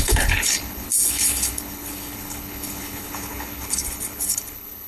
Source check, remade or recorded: remade